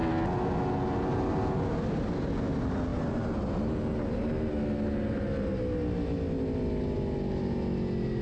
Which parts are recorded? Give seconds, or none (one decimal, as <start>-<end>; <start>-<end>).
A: 0.0-8.2